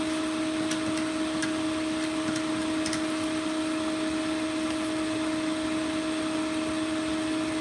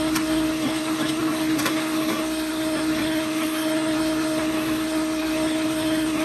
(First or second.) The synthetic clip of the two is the second